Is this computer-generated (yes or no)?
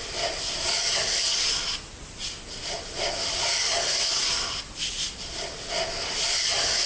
no